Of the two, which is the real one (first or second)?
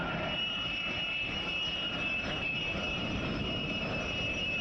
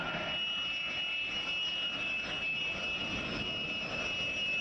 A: second